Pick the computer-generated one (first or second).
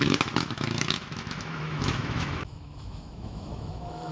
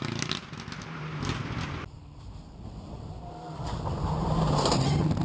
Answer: first